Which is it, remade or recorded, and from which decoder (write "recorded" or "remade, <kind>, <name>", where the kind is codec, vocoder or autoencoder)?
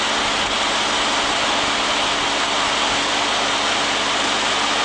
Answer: recorded